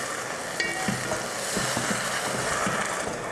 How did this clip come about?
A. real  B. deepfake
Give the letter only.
A